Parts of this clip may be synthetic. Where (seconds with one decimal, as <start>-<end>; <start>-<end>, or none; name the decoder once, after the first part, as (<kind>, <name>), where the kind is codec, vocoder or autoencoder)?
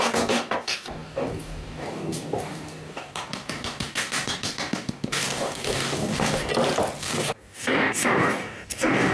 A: 0.0-6.5 (codec, DAC); 7.0-9.1